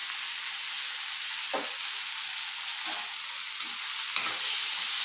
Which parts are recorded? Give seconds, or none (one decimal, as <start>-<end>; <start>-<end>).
0.0-5.0